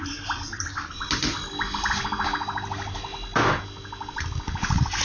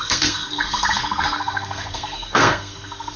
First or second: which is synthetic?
second